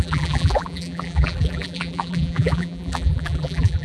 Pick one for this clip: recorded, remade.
remade